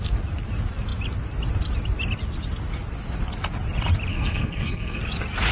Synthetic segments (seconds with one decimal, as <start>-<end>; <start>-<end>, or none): 4.1-5.0

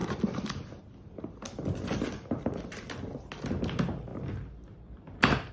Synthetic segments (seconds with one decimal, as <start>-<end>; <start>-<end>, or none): 0.0-1.2

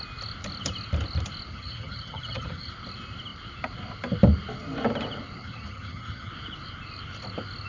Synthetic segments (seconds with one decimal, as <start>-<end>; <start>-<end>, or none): 1.5-2.7; 5.4-6.3

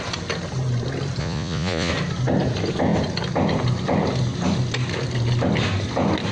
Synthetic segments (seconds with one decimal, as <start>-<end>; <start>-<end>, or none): 1.2-1.9

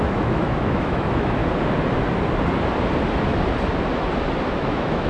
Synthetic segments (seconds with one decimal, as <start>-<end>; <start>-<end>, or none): 0.0-1.4; 4.5-5.1